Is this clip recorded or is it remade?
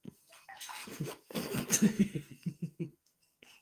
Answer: remade